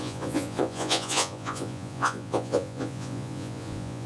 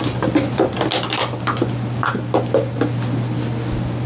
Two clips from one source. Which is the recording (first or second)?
second